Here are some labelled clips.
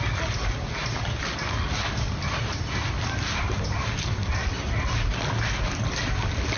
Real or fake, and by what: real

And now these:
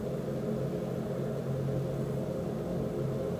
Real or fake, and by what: real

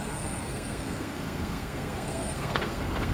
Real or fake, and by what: fake, codec, SNAC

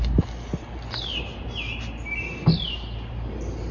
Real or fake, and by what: real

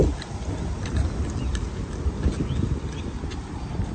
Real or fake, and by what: real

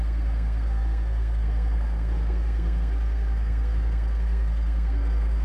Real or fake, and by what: fake, codec, SNAC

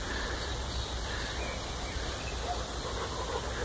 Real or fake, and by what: real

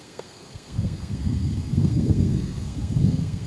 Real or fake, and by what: fake, codec, SNAC